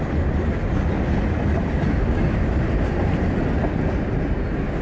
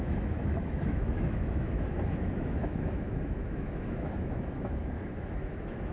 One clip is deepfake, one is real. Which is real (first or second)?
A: first